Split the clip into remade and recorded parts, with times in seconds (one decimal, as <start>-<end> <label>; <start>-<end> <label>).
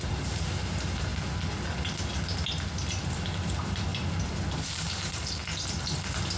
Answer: 0.0-1.1 remade; 1.1-3.1 recorded; 3.1-3.9 remade; 3.9-4.7 recorded; 4.7-5.4 remade; 5.4-6.4 recorded